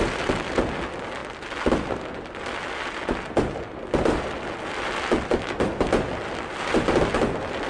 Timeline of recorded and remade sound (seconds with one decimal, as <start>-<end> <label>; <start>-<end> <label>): 0.0-7.7 recorded